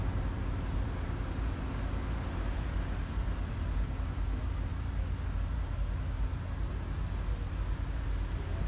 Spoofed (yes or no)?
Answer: no